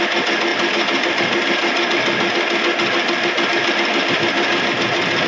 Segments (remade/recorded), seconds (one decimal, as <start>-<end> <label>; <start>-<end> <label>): 0.0-5.3 recorded